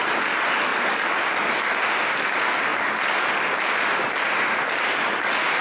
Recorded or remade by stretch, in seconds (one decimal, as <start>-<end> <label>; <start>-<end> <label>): 0.0-5.6 recorded